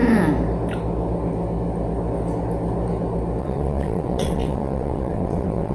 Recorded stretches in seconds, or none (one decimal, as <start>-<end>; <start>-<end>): 0.0-3.4